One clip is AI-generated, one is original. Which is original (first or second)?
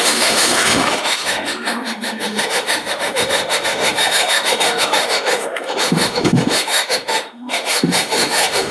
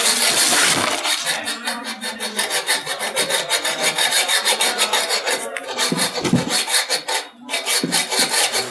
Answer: second